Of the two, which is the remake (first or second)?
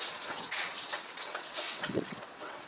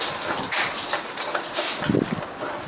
first